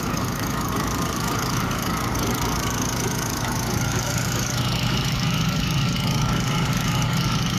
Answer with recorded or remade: remade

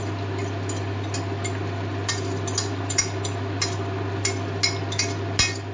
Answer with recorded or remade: recorded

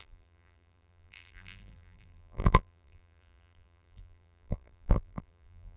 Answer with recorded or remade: remade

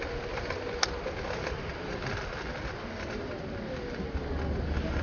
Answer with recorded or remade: recorded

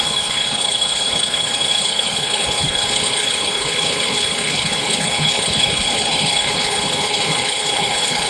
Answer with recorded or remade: remade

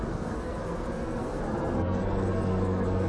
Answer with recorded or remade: remade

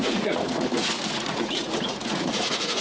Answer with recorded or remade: remade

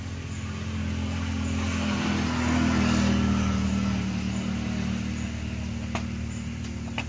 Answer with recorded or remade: recorded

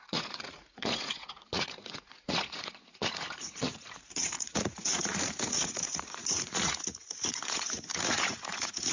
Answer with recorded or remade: remade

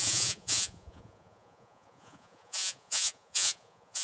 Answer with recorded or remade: remade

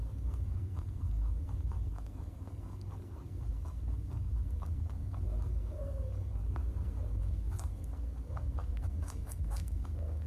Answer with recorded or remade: remade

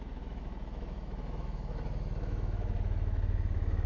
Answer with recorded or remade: remade